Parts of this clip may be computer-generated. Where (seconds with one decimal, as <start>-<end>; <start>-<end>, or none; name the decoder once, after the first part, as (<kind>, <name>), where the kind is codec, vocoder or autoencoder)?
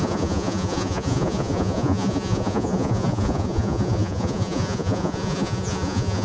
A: 0.0-6.2 (vocoder, Vocos)